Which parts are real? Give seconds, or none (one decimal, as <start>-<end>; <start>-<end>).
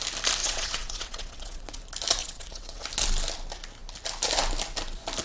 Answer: 0.0-0.4; 1.8-2.2; 2.8-5.2